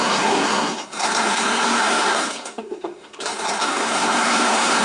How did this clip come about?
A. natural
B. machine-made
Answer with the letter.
B